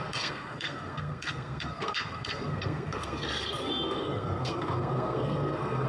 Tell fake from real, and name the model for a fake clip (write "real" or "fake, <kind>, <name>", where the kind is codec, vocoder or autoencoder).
fake, codec, SNAC